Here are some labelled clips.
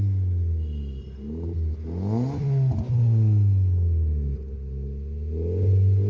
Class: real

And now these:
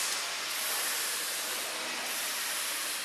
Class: real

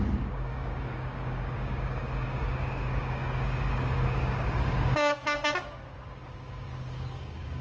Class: fake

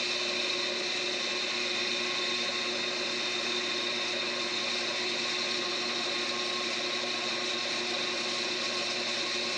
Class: real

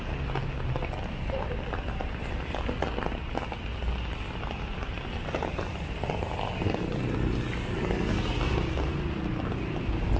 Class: real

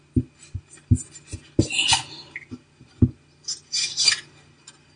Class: real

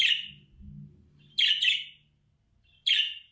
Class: real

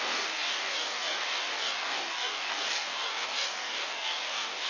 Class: fake